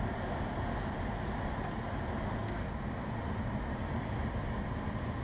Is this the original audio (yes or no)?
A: yes